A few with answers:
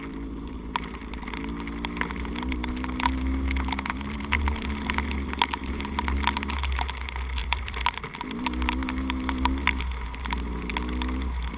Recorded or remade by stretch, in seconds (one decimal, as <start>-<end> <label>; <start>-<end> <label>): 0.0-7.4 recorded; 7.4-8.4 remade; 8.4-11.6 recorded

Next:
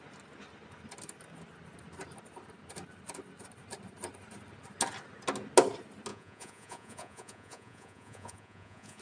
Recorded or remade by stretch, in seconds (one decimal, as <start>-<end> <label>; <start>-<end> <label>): 0.0-6.1 recorded; 6.1-9.0 remade

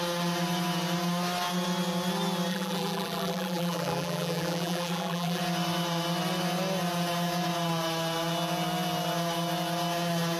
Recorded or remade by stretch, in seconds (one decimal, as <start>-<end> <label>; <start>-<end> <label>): 0.0-2.5 recorded; 2.5-5.4 remade; 5.4-10.4 recorded

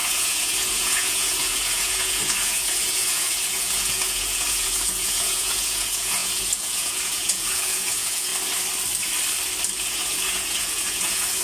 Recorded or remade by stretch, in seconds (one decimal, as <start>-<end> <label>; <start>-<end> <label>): 0.0-8.3 remade; 8.3-9.9 recorded; 9.9-11.4 remade

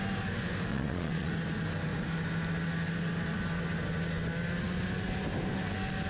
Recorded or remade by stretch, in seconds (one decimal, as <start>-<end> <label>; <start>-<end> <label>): 0.0-0.7 recorded; 0.7-1.3 remade; 1.3-6.1 recorded